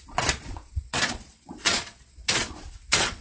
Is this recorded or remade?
remade